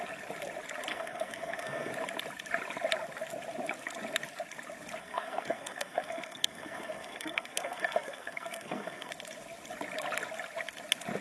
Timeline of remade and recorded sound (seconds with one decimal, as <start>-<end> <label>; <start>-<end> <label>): 0.0-0.9 recorded; 0.9-1.9 remade; 1.9-5.0 recorded; 5.0-9.1 remade; 9.1-11.2 recorded